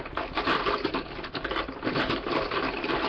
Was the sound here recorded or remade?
remade